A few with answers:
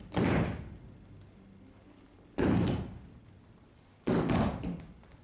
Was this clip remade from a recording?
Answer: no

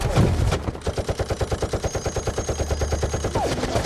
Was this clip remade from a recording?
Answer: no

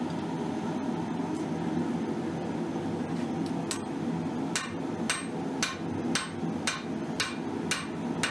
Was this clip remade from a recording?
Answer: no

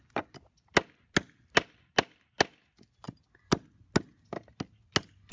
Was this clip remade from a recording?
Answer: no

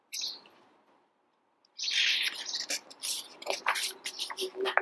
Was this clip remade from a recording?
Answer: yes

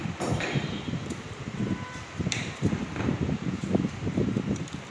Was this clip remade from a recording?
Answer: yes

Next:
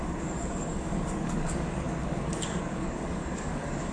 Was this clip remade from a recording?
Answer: yes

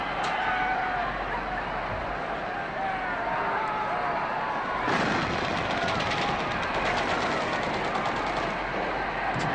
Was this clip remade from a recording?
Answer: no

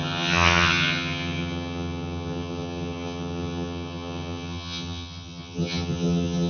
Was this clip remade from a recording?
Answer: yes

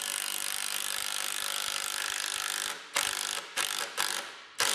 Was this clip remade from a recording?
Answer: no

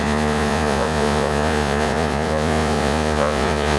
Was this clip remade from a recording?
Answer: yes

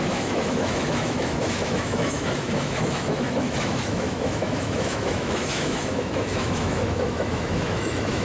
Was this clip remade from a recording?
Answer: yes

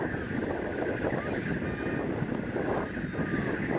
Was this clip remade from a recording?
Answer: no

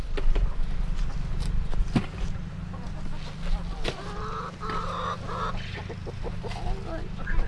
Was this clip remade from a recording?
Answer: no